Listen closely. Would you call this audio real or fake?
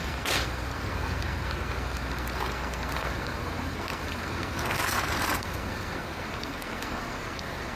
fake